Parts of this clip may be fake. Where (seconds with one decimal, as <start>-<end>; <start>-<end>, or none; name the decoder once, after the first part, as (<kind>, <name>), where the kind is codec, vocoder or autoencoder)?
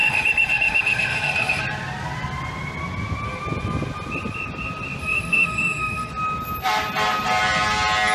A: 0.0-1.6 (autoencoder, DAC-VAE); 5.0-6.1